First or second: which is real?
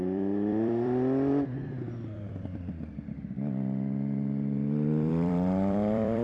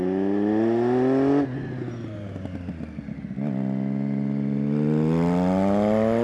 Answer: second